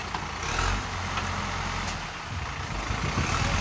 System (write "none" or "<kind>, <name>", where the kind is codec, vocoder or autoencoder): none